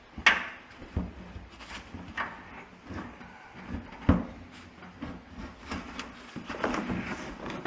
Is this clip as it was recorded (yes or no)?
yes